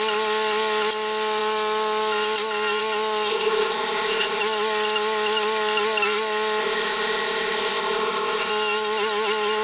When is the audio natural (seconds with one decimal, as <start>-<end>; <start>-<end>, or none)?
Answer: 0.0-3.3; 4.4-6.6; 8.5-9.6